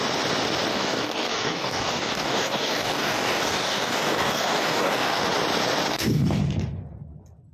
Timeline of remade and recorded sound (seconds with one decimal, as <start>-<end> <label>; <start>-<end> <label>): 0.0-0.7 recorded; 0.7-5.2 remade; 5.2-5.9 recorded; 5.9-6.4 remade; 6.4-7.5 recorded